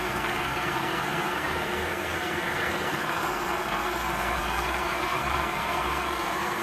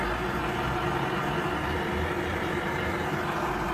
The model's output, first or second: first